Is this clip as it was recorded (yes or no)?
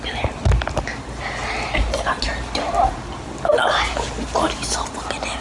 yes